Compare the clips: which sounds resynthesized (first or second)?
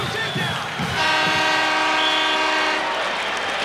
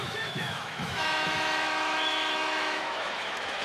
second